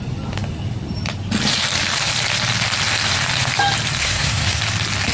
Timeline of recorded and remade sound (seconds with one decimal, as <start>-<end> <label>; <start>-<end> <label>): 0.0-4.0 recorded; 4.0-4.6 remade; 4.6-5.1 recorded